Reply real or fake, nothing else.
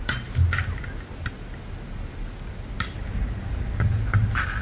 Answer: real